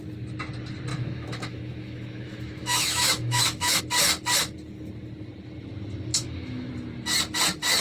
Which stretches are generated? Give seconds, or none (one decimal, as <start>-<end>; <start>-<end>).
0.9-3.8; 6.1-6.7